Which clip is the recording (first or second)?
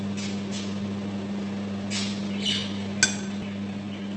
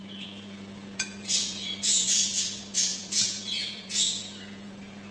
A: first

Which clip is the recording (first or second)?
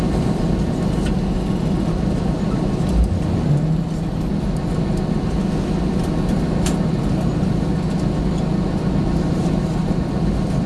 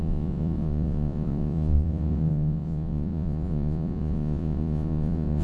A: first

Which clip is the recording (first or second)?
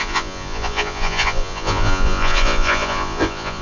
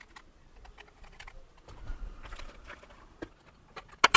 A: second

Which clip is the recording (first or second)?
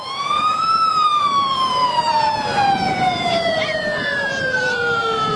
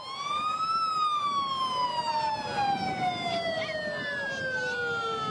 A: second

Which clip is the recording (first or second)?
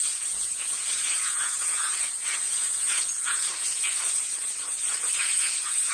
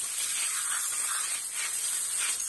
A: second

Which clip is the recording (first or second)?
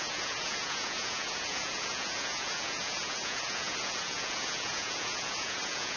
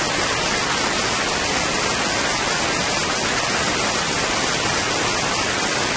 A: second